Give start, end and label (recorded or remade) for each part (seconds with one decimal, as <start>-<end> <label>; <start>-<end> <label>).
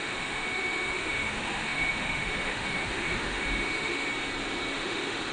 0.0-4.1 remade; 4.1-4.7 recorded; 4.7-5.3 remade